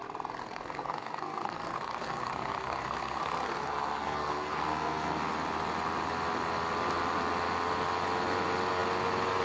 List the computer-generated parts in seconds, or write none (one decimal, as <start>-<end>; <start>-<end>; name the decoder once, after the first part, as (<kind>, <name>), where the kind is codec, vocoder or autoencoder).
0.4-5.2 (codec, SNAC)